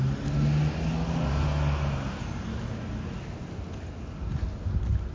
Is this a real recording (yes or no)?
yes